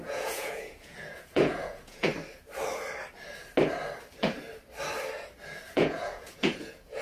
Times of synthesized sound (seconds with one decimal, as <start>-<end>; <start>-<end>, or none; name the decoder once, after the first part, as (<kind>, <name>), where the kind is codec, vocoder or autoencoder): 0.0-2.1 (vocoder, Vocos); 5.7-7.0